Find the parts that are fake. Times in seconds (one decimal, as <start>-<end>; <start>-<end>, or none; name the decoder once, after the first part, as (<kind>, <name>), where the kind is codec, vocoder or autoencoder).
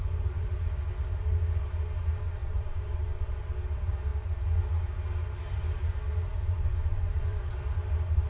2.4-2.9 (vocoder, BigVGAN v2); 6.3-7.5